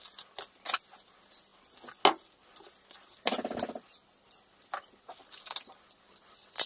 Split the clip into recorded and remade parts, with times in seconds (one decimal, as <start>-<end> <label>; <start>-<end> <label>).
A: 0.0-6.7 recorded